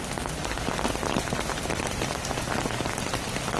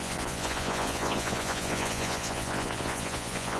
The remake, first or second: second